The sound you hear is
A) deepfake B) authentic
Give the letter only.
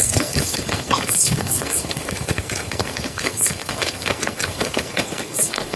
A